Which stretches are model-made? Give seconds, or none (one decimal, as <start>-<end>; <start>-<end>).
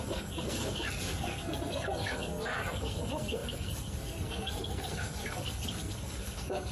0.0-6.7